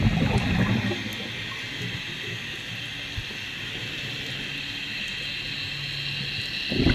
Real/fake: real